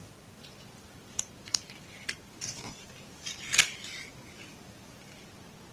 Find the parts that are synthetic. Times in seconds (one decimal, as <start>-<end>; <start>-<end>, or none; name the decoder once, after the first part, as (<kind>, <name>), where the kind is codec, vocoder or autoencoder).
0.0-3.4 (vocoder, BigVGAN v2); 4.5-5.2